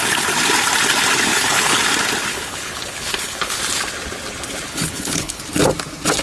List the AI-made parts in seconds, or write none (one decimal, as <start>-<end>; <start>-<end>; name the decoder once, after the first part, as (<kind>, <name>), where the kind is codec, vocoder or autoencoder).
1.3-1.8 (codec, HILCodec); 2.3-3.6; 4.7-5.4